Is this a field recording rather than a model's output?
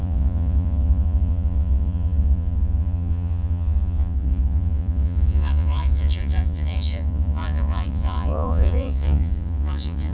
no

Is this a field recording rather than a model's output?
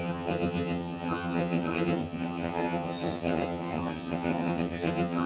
no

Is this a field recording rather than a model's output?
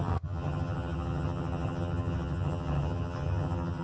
no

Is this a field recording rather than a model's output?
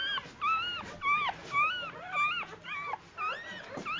yes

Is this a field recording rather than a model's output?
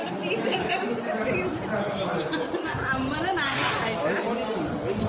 yes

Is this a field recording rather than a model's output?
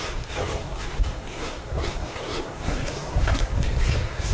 no